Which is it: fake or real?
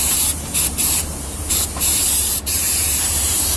fake